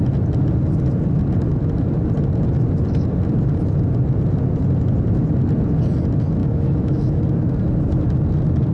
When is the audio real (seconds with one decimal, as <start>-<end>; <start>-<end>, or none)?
0.0-6.4; 7.2-8.7

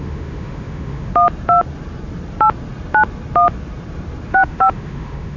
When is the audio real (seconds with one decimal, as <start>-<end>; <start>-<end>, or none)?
1.1-4.3

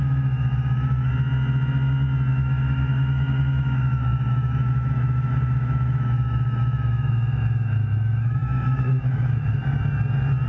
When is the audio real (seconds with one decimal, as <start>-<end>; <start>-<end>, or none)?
1.1-2.3; 9.6-10.5

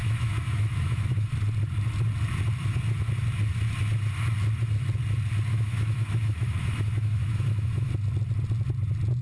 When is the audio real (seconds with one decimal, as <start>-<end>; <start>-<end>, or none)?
1.3-5.5; 7.9-9.2

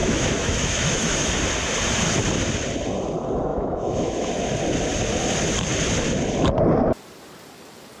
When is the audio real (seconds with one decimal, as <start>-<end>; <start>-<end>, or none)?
1.3-3.5; 4.3-8.0

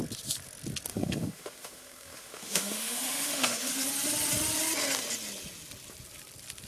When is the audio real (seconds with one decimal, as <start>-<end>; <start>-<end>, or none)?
0.0-0.9; 3.7-6.7

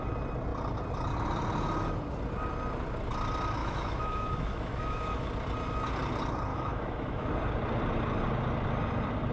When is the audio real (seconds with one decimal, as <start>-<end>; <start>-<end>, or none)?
0.0-3.6; 5.3-6.5; 7.3-9.3

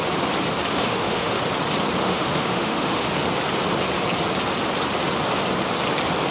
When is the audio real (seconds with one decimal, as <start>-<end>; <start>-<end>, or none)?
0.0-0.7; 1.4-2.0; 3.1-6.3